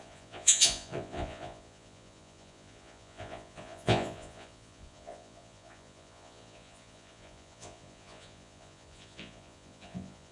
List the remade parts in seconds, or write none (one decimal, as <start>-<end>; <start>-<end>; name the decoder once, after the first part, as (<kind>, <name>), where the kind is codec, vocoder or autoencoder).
0.0-10.3 (vocoder, Vocos)